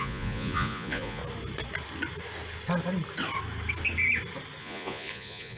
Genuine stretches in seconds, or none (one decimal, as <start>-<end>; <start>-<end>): 1.2-4.6